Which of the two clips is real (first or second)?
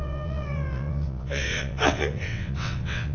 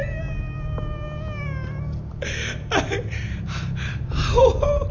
second